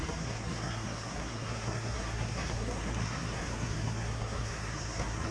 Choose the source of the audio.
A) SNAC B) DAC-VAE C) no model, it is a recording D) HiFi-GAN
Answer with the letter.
A